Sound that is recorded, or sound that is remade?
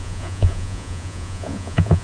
remade